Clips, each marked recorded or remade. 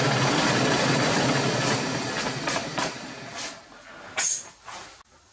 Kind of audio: remade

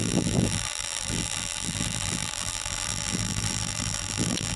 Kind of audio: remade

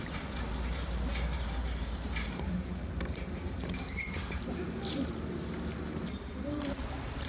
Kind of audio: remade